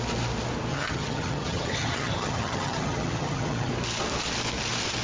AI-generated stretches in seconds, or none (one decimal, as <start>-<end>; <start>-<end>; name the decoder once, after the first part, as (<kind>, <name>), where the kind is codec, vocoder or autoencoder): 0.7-3.7 (vocoder, HiFi-GAN)